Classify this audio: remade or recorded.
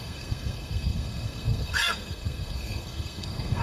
remade